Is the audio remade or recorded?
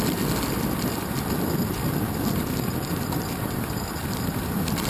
recorded